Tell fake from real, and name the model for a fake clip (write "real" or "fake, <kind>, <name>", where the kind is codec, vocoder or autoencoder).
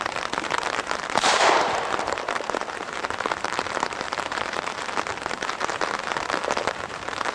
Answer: fake, vocoder, BigVGAN v2